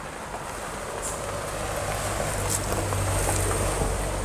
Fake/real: real